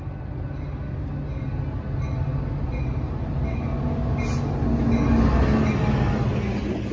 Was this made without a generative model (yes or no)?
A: yes